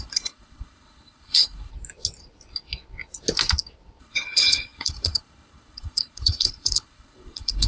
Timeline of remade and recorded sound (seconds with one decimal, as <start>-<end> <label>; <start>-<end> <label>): 0.0-1.7 remade; 1.7-4.0 recorded; 4.0-7.7 remade